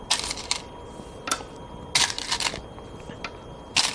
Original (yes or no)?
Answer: yes